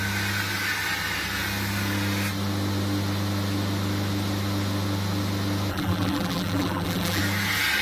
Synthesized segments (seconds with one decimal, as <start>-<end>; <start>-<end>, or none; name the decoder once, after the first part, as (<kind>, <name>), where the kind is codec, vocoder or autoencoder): 5.7-7.2 (vocoder, BigVGAN v2)